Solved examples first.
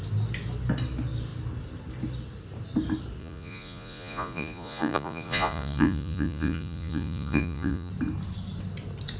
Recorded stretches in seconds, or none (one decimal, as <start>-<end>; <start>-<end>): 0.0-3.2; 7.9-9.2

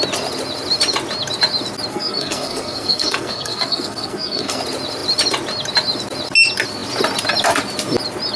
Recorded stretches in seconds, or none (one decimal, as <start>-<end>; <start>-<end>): 0.0-1.9; 4.6-8.4

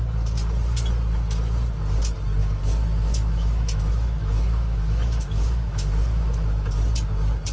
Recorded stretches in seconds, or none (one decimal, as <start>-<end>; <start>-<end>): 0.0-2.4; 6.7-7.5

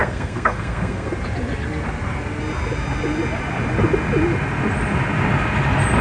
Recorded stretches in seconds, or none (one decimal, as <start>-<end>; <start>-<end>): 1.1-6.0

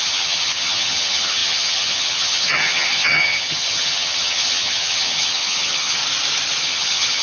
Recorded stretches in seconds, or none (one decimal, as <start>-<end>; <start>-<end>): 6.0-6.6